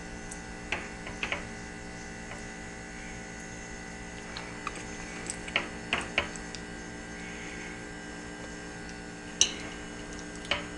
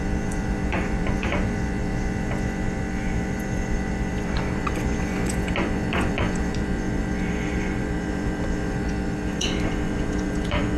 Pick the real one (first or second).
first